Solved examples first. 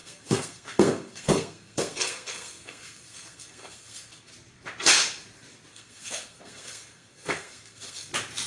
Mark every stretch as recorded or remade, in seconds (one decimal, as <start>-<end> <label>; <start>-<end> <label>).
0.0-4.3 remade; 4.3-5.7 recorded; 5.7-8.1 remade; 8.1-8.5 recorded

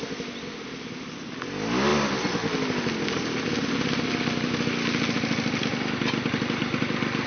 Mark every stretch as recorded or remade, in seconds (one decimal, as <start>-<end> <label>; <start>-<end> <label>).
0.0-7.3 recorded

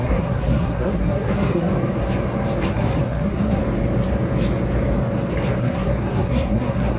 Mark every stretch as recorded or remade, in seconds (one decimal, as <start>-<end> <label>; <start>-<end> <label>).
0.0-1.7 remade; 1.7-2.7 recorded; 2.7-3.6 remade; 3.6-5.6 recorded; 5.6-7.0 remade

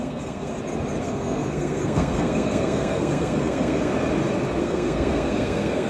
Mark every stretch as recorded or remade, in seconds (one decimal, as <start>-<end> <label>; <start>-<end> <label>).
0.0-0.5 remade; 0.5-1.0 recorded; 1.0-3.9 remade; 3.9-4.6 recorded; 4.6-5.9 remade